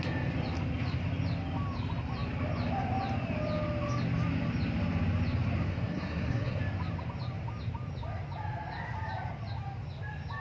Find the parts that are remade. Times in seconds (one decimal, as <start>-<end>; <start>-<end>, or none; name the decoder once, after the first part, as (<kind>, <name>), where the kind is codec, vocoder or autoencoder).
5.7-6.6 (codec, SNAC)